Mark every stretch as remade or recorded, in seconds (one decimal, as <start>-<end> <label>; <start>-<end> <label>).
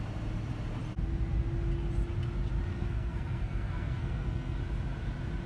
0.0-2.7 recorded; 2.7-4.6 remade; 4.6-5.5 recorded